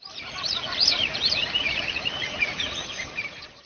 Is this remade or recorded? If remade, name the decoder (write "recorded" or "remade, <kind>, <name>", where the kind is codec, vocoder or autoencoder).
remade, vocoder, Vocos